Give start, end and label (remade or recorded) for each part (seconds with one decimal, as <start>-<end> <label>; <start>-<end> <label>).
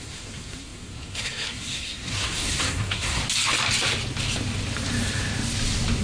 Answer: 0.0-3.2 remade; 3.2-6.0 recorded